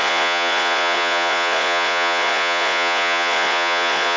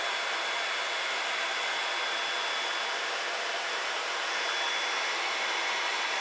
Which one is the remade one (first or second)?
first